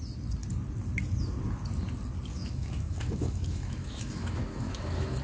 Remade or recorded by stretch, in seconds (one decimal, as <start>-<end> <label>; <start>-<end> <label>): 0.0-2.3 recorded; 2.3-5.2 remade